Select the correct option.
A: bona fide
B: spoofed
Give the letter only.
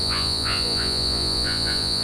B